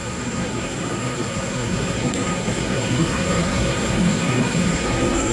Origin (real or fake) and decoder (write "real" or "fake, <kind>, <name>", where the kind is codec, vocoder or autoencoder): fake, codec, SNAC